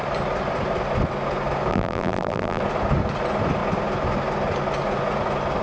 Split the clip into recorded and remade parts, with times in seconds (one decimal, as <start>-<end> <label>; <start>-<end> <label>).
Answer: 0.0-1.7 recorded; 1.7-2.6 remade; 2.6-5.6 recorded